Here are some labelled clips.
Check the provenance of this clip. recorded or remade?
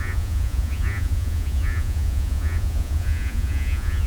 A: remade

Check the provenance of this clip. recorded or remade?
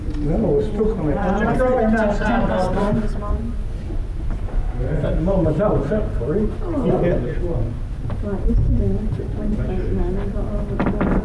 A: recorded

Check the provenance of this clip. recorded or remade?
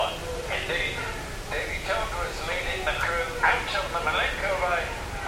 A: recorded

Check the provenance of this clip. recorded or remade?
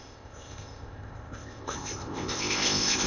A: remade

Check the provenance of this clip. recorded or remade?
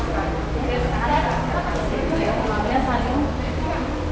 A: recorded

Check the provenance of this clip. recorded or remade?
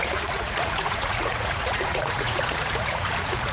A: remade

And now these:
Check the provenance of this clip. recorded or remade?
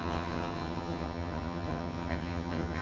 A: remade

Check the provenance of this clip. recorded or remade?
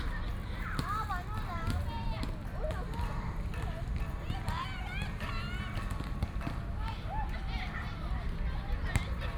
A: recorded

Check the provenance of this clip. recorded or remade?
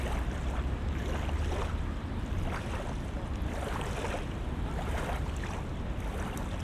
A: recorded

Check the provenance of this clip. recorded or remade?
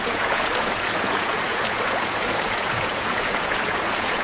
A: remade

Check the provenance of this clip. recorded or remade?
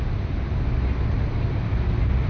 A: recorded